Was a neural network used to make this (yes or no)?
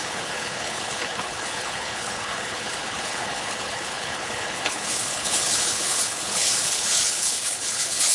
yes